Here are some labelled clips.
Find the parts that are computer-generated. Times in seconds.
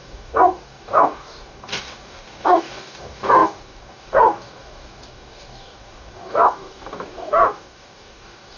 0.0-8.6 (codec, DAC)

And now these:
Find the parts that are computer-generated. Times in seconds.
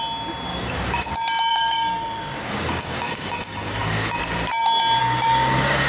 0.5-1.1 (codec, DAC); 1.5-4.2; 5.0-5.9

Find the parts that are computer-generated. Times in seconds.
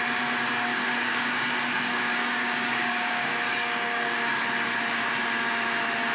0.7-4.4 (codec, DAC)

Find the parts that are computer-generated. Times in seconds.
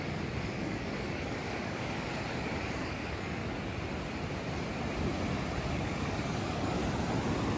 0.0-3.4 (codec, DAC); 5.7-6.8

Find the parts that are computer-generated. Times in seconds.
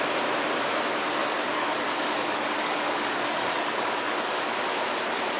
1.2-4.4 (codec, DAC)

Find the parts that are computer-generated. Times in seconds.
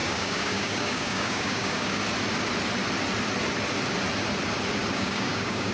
0.0-2.0 (codec, DAC); 4.9-5.7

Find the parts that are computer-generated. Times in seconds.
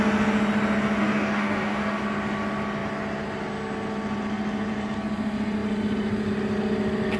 1.0-2.0 (codec, DAC)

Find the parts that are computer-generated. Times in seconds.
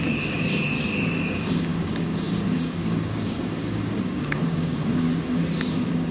0.0-6.1 (codec, DAC)